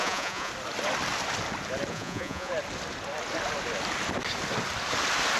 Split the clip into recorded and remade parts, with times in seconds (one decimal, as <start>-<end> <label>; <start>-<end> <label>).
0.0-0.5 remade; 0.5-1.9 recorded; 1.9-2.5 remade; 2.5-5.4 recorded

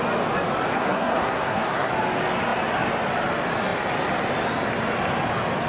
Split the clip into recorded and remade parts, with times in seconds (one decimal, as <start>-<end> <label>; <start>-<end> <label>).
0.0-0.7 recorded; 0.7-1.9 remade; 1.9-5.7 recorded

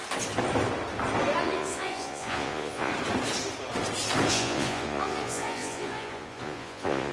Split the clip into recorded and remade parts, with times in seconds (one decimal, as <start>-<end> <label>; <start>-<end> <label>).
0.0-1.4 recorded; 1.4-2.9 remade; 2.9-4.3 recorded; 4.3-7.1 remade

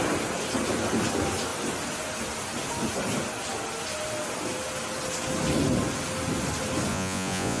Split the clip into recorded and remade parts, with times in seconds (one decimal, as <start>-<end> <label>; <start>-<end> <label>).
0.0-6.9 recorded; 6.9-7.6 remade